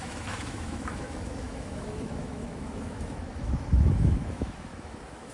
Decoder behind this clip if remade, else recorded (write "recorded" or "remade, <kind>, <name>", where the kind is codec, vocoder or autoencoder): remade, autoencoder, DAC-VAE